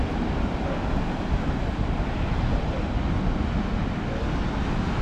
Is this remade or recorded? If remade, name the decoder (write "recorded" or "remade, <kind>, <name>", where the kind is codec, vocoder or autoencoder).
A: recorded